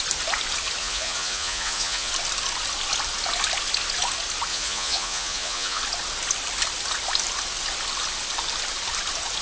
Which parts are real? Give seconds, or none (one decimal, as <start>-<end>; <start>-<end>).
0.0-0.8; 2.1-4.5; 5.8-9.4